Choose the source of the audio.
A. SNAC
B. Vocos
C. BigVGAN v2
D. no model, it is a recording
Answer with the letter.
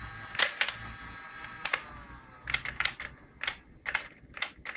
D